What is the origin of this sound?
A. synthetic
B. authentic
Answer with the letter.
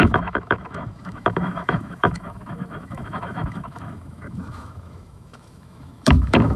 A